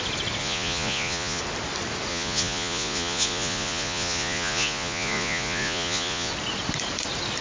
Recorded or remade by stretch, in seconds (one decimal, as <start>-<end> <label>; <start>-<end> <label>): 0.0-0.4 recorded; 0.4-1.4 remade; 1.4-2.1 recorded; 2.1-6.3 remade; 6.3-7.4 recorded